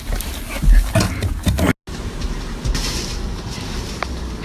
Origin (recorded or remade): recorded